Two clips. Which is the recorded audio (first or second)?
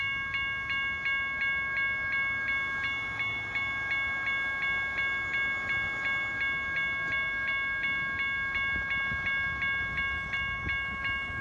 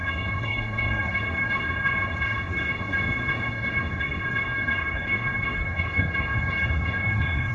first